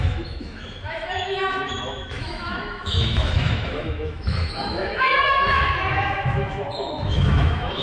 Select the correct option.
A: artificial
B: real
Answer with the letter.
A